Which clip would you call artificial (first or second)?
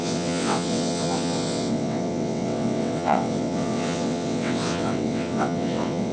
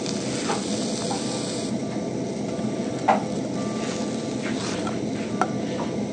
first